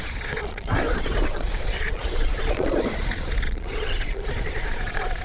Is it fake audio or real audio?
fake